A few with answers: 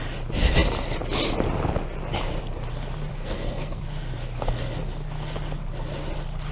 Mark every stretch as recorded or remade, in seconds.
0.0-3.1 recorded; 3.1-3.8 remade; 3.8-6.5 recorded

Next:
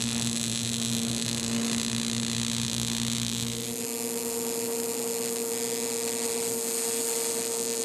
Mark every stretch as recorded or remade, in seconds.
0.0-7.8 recorded

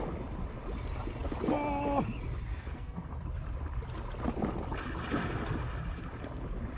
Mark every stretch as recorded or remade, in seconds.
0.0-2.5 recorded; 2.5-3.1 remade; 3.1-6.8 recorded

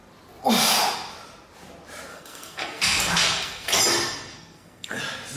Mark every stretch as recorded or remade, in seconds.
0.0-2.1 recorded; 2.1-3.8 remade; 3.8-4.3 recorded; 4.3-5.0 remade; 5.0-5.4 recorded

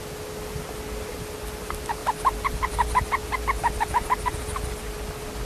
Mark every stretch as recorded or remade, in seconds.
0.0-5.4 recorded

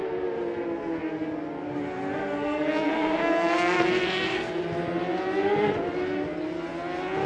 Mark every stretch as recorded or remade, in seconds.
0.0-2.2 recorded; 2.2-4.5 remade; 4.5-7.3 recorded